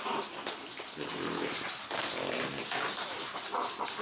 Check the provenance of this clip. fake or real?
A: real